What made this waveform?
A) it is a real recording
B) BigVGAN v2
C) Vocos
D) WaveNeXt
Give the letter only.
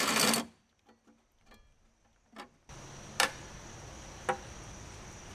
A